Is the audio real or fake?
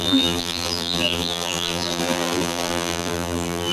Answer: fake